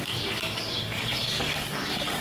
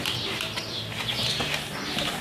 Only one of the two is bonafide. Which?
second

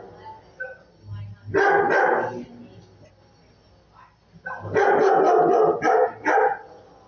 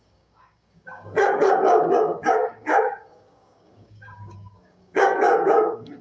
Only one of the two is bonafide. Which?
first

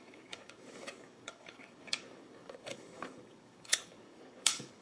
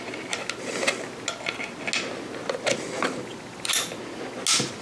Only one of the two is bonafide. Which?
second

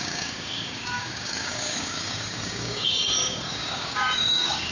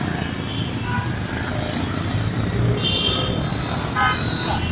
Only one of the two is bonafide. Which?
second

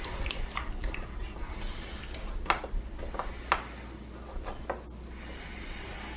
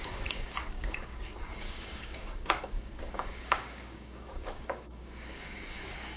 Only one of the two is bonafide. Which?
first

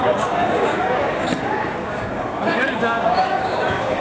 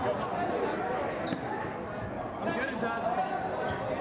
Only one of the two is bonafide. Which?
second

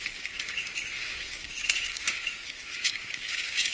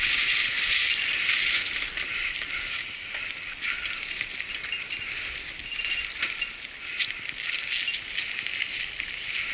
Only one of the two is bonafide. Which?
second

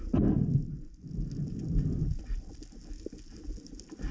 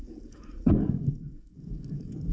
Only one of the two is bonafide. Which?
first